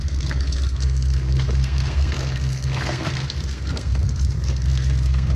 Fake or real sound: fake